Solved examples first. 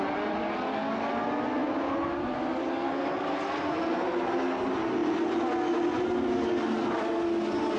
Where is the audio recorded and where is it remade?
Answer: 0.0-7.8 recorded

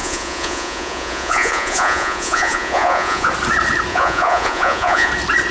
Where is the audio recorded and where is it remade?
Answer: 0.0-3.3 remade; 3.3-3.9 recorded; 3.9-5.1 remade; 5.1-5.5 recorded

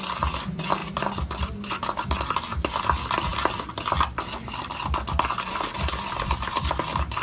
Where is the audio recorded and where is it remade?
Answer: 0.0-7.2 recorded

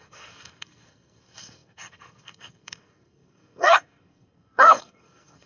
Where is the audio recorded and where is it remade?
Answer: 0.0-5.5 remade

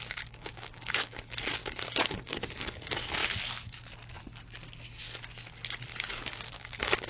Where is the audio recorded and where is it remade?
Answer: 0.0-3.2 remade; 3.2-6.1 recorded; 6.1-7.1 remade

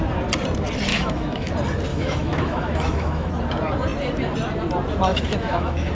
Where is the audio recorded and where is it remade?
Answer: 0.0-0.9 recorded; 0.9-1.5 remade; 1.5-1.9 recorded; 1.9-3.3 remade; 3.3-5.1 recorded; 5.1-5.9 remade

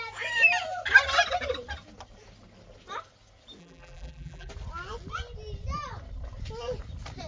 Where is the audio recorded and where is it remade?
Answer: 0.0-3.6 recorded; 3.6-4.5 remade; 4.5-7.3 recorded